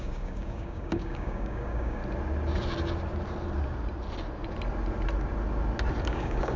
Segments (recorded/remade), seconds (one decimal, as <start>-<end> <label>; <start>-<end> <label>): 0.0-2.0 remade; 2.0-6.0 recorded; 6.0-6.6 remade